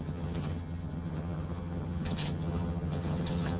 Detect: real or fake fake